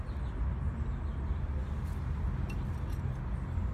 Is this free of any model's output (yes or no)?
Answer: yes